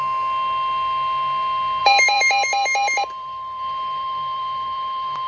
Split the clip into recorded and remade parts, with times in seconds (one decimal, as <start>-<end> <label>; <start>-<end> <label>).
0.0-1.8 recorded; 1.8-5.3 remade